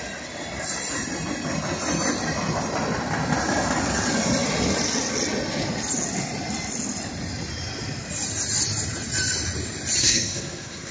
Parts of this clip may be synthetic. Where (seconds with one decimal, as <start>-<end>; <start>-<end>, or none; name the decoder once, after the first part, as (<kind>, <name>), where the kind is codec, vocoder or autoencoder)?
10.0-10.9 (codec, SNAC)